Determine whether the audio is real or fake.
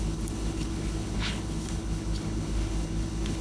fake